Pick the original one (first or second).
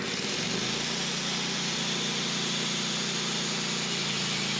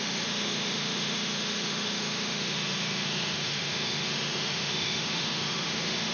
first